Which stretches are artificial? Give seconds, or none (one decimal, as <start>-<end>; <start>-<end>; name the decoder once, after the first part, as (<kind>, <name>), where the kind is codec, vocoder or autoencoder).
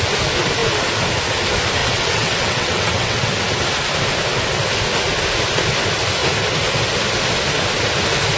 1.8-3.3 (vocoder, WaveNeXt)